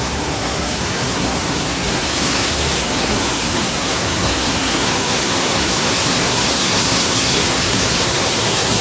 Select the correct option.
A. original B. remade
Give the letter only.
B